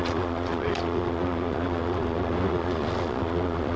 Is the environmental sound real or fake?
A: fake